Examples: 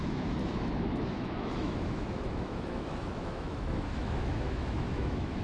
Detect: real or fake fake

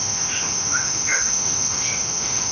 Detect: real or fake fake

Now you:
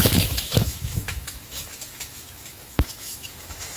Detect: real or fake fake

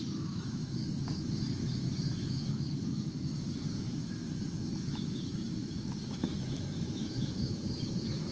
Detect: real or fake fake